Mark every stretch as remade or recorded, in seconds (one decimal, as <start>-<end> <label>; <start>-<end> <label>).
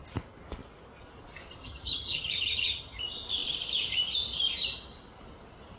0.0-1.6 recorded; 1.6-3.0 remade; 3.0-5.8 recorded